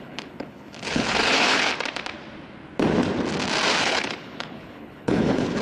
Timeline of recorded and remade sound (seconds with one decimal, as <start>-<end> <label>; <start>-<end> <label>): 0.0-1.7 remade; 1.7-3.8 recorded; 3.8-5.6 remade